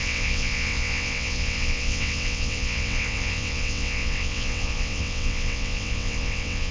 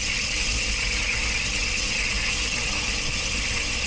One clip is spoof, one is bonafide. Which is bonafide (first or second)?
second